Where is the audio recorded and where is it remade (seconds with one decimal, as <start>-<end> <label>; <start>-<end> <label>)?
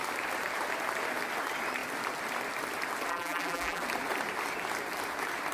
0.0-3.1 recorded; 3.1-3.8 remade; 3.8-5.5 recorded